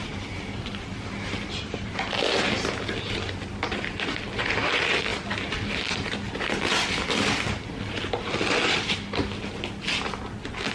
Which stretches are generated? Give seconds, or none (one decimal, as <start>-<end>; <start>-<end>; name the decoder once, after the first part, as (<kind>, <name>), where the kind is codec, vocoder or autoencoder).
none